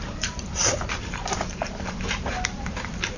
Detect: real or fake fake